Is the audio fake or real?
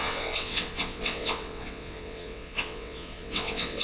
fake